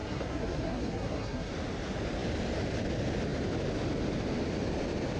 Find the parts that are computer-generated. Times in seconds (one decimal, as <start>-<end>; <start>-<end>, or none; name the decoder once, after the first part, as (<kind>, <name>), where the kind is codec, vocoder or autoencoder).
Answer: 0.0-1.5 (codec, SNAC)